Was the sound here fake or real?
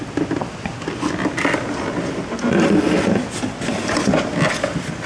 real